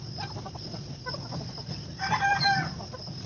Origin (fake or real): real